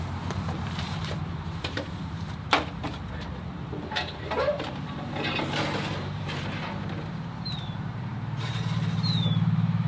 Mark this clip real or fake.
fake